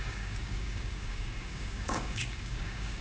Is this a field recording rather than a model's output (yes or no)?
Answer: no